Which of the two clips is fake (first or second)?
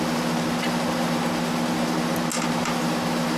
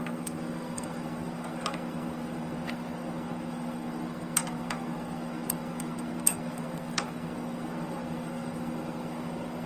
second